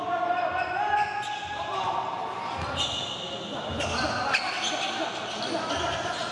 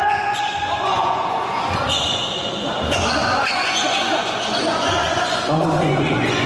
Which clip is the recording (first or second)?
first